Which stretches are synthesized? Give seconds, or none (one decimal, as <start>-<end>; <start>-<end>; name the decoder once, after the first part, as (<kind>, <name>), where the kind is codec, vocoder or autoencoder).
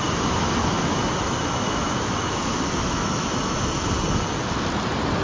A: 0.6-3.7 (autoencoder, DAC-VAE)